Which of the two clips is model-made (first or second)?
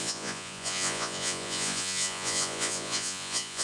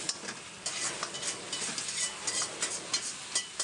first